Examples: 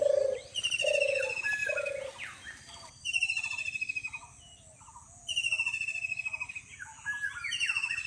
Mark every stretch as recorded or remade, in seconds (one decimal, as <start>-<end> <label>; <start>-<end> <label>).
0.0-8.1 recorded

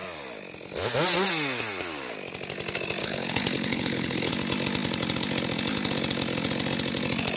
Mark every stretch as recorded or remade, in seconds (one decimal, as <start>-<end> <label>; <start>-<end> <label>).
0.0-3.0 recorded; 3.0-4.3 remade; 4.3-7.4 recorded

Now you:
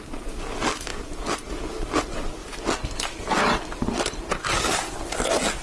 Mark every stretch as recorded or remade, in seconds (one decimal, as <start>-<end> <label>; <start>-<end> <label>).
0.0-5.6 recorded